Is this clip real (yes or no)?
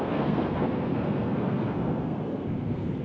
no